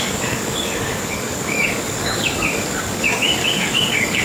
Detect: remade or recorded remade